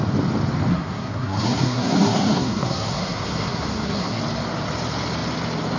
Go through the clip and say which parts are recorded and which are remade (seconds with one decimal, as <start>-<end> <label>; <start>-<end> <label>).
0.0-0.7 recorded; 0.7-4.2 remade; 4.2-5.8 recorded